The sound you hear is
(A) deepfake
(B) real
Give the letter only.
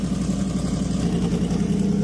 B